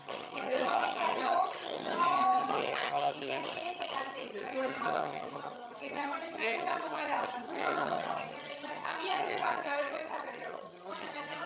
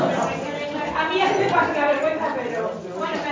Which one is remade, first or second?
first